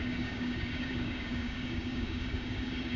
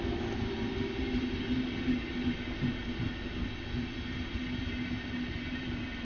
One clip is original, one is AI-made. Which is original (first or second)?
second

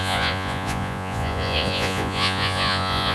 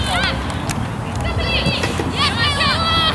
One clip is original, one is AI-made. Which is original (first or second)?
second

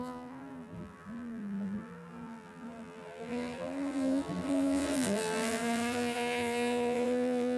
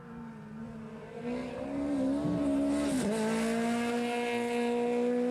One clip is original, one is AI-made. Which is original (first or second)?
second